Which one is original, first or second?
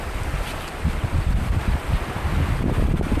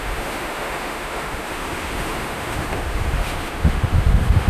first